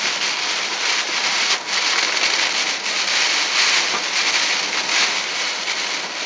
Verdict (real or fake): real